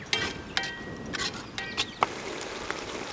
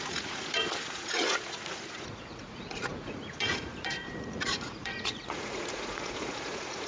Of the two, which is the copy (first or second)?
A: second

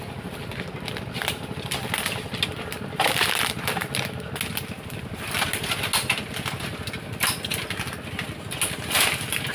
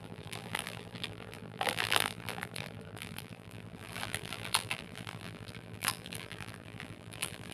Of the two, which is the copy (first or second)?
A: second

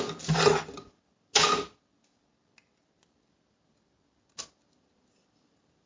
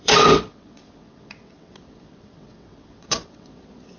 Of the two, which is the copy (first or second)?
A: second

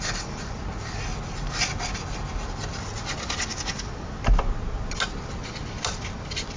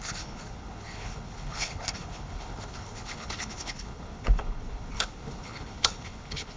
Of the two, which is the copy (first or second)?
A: second